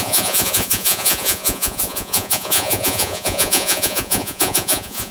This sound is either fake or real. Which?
fake